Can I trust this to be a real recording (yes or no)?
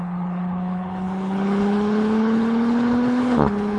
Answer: no